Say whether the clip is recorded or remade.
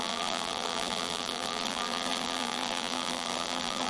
remade